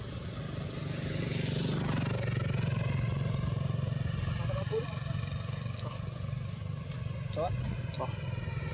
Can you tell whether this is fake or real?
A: real